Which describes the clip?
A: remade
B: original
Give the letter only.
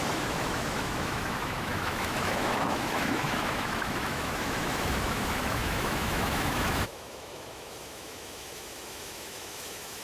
A